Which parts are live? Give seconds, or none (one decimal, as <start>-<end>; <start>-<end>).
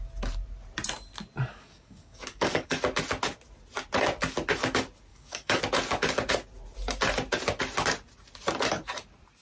0.0-1.5; 2.8-5.1; 5.6-9.4